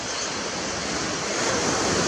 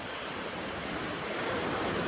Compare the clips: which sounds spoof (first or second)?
second